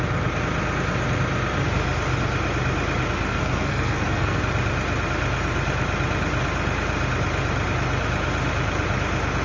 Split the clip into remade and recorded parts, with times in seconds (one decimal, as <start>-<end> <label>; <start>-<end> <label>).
0.0-3.3 recorded; 3.3-4.4 remade; 4.4-9.4 recorded